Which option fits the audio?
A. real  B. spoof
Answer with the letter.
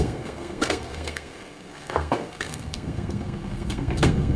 B